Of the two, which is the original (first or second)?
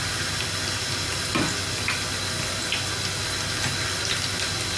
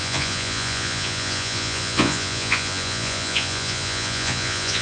first